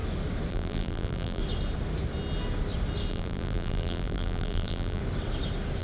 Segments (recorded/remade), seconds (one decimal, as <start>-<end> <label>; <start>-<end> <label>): 0.0-0.5 recorded; 0.5-1.4 remade; 1.4-3.1 recorded; 3.1-5.0 remade; 5.0-5.8 recorded